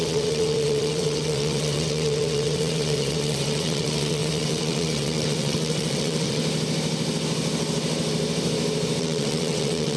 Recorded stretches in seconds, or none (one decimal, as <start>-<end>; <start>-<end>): 6.4-9.0